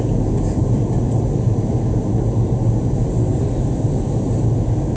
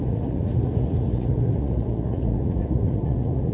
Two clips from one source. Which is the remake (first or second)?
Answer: second